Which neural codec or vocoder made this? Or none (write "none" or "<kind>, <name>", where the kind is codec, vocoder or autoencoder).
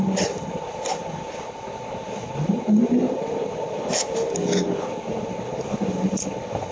codec, HILCodec